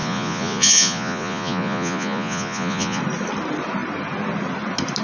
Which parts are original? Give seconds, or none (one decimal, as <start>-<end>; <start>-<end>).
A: 3.0-5.0